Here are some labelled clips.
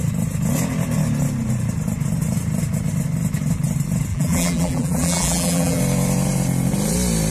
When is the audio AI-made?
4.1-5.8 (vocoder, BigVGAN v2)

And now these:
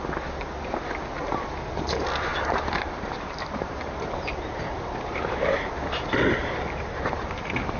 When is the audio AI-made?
2.3-5.7 (vocoder, BigVGAN v2); 6.4-7.8